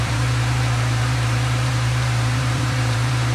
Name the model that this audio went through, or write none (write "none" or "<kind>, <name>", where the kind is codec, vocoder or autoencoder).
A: vocoder, BigVGAN v2